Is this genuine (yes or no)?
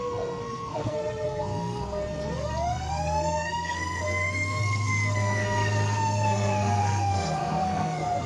no